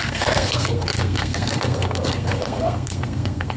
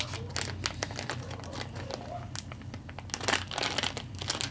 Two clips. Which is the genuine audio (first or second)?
second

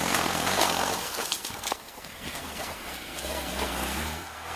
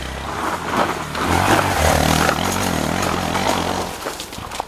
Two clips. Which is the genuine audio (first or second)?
second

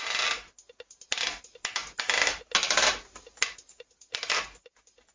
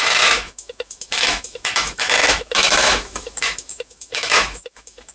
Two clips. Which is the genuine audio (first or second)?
first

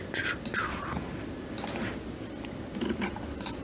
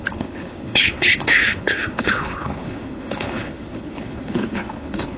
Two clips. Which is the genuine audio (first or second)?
first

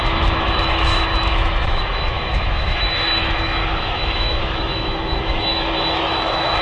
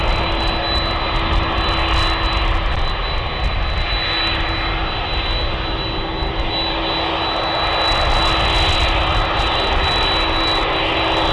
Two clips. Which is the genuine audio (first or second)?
second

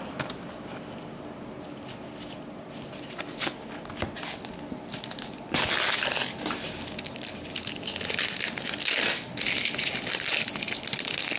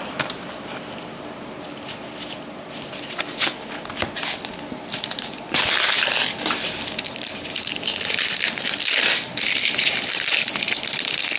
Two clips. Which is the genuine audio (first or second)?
first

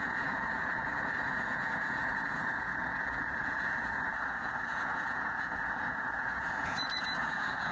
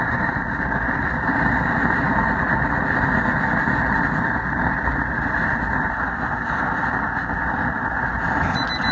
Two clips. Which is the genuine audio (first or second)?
second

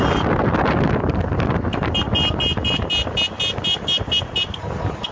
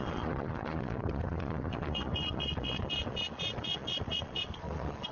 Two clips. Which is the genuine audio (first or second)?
first